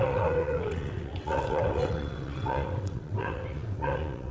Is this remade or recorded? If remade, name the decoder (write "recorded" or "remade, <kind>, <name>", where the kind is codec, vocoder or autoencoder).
remade, vocoder, WaveNeXt